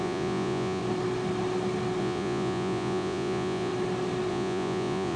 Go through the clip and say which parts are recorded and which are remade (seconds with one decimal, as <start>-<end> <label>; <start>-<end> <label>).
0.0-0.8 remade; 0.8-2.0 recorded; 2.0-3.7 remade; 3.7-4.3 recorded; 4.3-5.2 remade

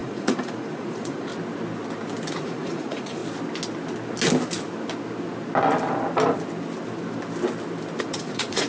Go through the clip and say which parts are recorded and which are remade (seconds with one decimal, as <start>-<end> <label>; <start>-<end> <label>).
0.0-1.3 remade; 1.3-2.3 recorded; 2.3-3.2 remade; 3.2-8.0 recorded; 8.0-8.7 remade

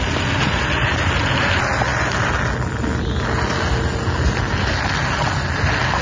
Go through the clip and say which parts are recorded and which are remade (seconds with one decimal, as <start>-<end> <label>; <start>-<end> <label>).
0.0-6.0 recorded